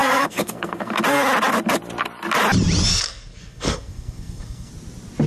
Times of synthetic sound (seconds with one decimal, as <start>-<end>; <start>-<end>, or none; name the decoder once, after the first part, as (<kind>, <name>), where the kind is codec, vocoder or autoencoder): 0.0-1.0 (codec, SNAC); 2.9-4.7